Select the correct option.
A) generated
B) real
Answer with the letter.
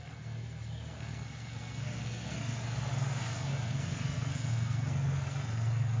A